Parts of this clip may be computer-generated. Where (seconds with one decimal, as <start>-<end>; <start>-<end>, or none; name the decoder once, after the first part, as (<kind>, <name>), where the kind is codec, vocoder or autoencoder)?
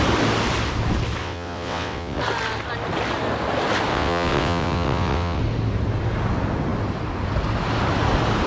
1.2-2.2 (vocoder, WaveNeXt); 3.9-5.4